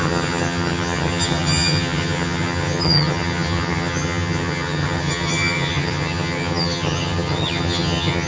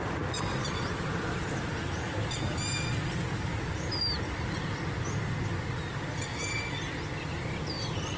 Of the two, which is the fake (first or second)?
first